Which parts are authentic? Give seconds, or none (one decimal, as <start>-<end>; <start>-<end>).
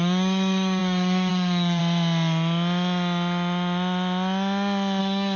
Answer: 1.8-5.0